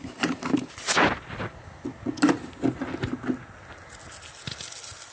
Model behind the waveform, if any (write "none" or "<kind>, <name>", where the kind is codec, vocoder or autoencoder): none